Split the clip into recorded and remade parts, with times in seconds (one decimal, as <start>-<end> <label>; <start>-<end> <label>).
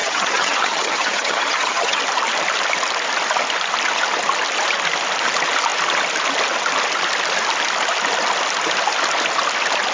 0.0-2.0 remade; 2.0-9.9 recorded